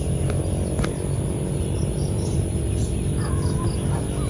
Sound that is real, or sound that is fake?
real